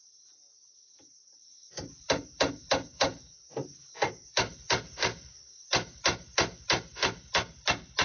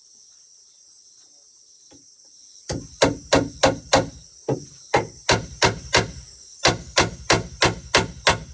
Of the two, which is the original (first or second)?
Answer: second